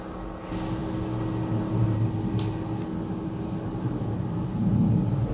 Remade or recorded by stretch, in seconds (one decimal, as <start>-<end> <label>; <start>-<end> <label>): 0.0-5.3 recorded

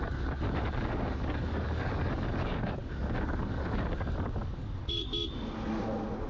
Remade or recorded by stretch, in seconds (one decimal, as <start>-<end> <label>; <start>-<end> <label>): 0.0-5.0 remade; 5.0-6.3 recorded

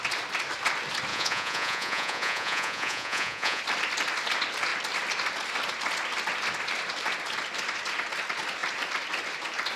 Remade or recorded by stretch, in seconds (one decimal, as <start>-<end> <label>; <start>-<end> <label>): 0.0-1.1 recorded; 1.1-3.6 remade; 3.6-9.8 recorded

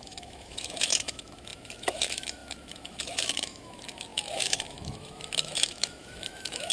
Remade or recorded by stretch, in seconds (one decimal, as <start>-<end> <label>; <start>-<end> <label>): 0.0-6.7 remade

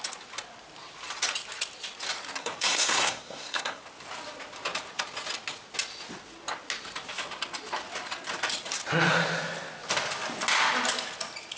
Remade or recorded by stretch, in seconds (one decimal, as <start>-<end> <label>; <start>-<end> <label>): 0.0-2.4 recorded; 2.4-3.8 remade; 3.8-11.6 recorded

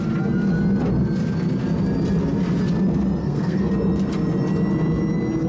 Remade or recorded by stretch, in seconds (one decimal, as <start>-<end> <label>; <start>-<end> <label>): 0.0-3.2 recorded; 3.2-3.7 remade; 3.7-5.5 recorded